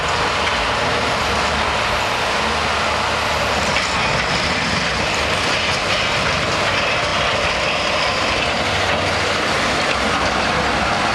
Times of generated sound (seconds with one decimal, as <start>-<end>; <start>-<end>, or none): none